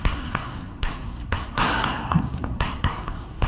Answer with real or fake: fake